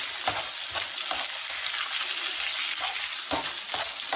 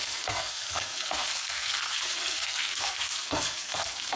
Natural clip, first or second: first